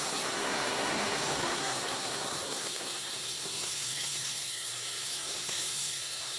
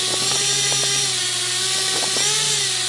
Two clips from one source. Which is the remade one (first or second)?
first